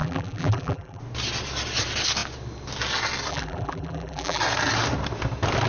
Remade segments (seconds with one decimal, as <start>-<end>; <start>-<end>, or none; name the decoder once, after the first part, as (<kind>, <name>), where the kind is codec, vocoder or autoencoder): 0.0-1.0 (vocoder, BigVGAN v2); 3.3-4.4